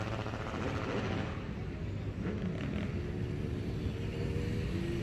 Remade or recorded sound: recorded